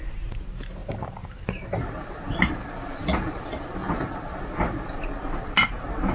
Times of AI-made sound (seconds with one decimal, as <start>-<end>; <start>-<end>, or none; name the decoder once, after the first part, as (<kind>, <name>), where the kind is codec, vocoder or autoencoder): none